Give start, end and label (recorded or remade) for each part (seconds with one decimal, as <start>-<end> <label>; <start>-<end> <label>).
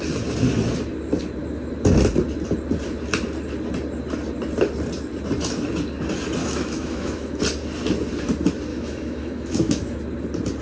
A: 0.0-6.4 recorded; 6.4-7.4 remade; 7.4-8.7 recorded; 8.7-10.0 remade; 10.0-10.6 recorded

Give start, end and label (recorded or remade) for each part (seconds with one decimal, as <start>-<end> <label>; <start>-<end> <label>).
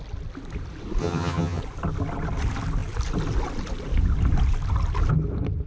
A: 0.0-1.0 recorded; 1.0-1.6 remade; 1.6-5.7 recorded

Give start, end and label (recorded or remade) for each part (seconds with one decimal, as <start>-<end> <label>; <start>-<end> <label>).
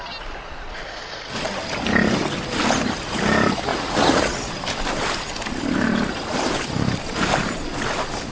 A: 0.0-3.7 recorded; 3.7-4.5 remade; 4.5-8.3 recorded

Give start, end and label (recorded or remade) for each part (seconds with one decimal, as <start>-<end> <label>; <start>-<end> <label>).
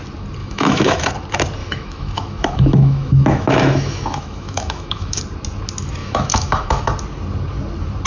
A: 0.0-0.4 recorded; 0.4-1.1 remade; 1.1-1.6 recorded; 1.6-5.2 remade; 5.2-6.0 recorded; 6.0-6.9 remade; 6.9-8.1 recorded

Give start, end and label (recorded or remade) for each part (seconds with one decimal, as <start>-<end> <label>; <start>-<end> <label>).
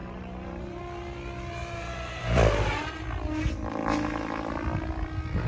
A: 0.0-0.8 remade; 0.8-1.6 recorded; 1.6-2.2 remade; 2.2-5.5 recorded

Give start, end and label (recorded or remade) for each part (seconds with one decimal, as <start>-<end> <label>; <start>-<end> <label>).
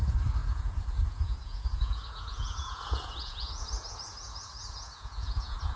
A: 0.0-5.8 remade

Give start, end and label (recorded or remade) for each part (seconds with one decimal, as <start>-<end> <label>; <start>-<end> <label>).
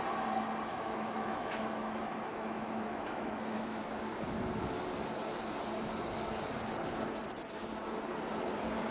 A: 0.0-0.7 recorded; 0.7-3.8 remade; 3.8-8.9 recorded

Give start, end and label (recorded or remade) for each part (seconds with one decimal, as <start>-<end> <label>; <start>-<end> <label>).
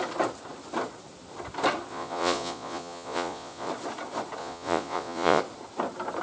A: 0.0-1.9 recorded; 1.9-3.7 remade; 3.7-4.4 recorded; 4.4-5.4 remade; 5.4-6.2 recorded